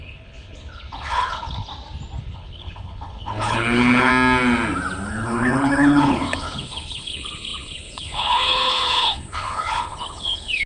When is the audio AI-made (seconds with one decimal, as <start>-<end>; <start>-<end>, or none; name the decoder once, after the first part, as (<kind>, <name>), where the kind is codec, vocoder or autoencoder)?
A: 0.0-1.7 (codec, HILCodec); 2.2-4.1; 5.1-10.7